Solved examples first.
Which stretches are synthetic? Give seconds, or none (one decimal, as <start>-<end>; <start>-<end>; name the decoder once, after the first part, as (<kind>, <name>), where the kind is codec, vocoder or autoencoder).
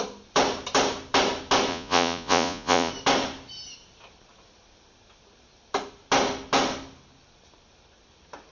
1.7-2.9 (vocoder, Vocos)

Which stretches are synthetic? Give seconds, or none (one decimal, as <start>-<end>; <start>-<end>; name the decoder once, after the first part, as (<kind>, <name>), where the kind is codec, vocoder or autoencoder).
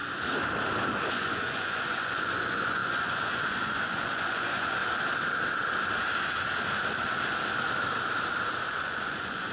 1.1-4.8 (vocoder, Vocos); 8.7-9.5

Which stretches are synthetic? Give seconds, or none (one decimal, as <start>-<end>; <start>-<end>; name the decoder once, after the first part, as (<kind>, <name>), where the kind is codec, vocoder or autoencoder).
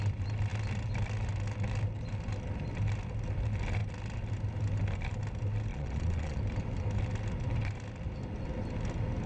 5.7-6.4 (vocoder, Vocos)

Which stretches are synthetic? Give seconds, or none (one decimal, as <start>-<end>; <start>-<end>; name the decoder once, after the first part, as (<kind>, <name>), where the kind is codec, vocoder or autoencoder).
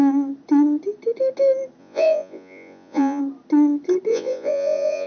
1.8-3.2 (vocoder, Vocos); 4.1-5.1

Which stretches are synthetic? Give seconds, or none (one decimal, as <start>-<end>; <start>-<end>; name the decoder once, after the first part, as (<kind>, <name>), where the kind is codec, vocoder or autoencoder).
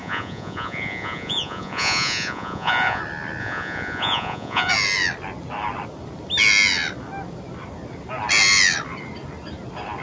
0.0-3.0 (vocoder, Vocos); 3.4-4.7